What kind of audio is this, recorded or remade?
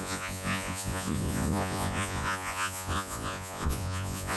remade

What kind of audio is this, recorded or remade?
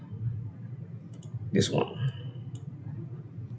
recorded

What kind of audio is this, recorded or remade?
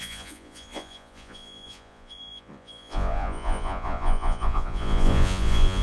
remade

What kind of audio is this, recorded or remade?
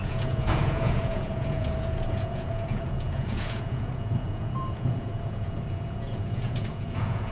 remade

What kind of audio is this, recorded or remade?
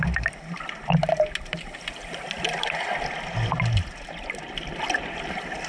recorded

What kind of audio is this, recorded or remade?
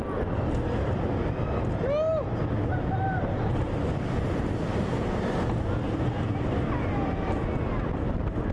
recorded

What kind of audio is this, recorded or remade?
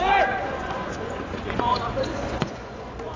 remade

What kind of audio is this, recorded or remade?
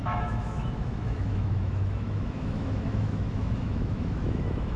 remade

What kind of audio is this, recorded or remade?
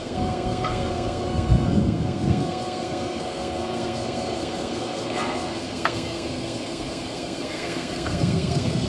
remade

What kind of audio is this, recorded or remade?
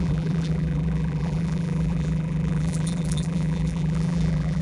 remade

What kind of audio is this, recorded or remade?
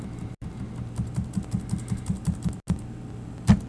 recorded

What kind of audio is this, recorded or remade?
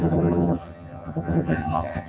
remade